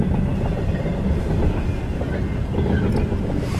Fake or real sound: real